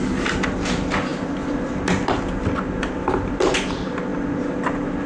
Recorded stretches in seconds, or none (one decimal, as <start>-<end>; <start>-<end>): 0.0-5.1